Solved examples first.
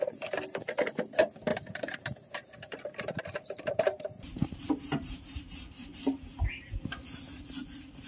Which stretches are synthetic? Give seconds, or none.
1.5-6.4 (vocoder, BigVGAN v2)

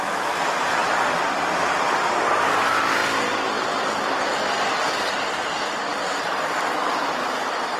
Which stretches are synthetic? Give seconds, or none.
0.0-3.0 (vocoder, BigVGAN v2)

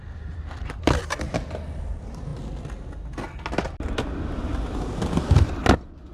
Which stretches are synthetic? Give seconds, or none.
0.0-2.3 (vocoder, BigVGAN v2); 5.4-6.1

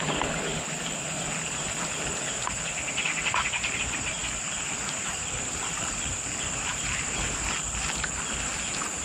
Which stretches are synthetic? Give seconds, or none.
0.0-0.5 (vocoder, BigVGAN v2); 2.2-4.2; 5.1-6.7; 8.5-9.0

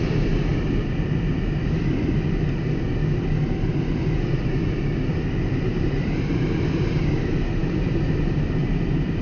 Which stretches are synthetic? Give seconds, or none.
0.0-0.5 (vocoder, BigVGAN v2); 5.1-9.2

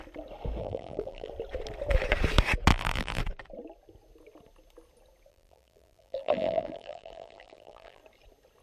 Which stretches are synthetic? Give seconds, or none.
0.6-1.3 (vocoder, BigVGAN v2); 2.7-3.2; 5.3-8.0

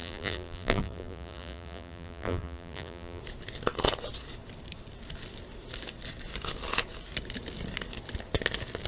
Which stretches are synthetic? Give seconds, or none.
0.0-3.2 (vocoder, BigVGAN v2)